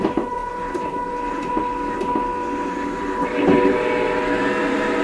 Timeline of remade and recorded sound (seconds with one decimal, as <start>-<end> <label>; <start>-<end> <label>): 0.0-0.4 remade; 0.4-1.1 recorded; 1.1-1.6 remade; 1.6-4.6 recorded; 4.6-5.0 remade